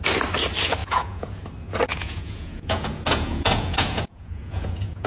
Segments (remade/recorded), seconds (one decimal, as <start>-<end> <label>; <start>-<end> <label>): 0.0-0.8 recorded; 0.8-1.4 remade; 1.4-1.9 recorded; 1.9-5.1 remade